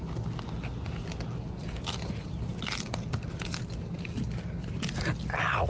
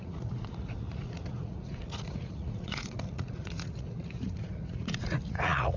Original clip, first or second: first